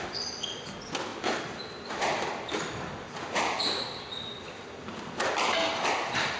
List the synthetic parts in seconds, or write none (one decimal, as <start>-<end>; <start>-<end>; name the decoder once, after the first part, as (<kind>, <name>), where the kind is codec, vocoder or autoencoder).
none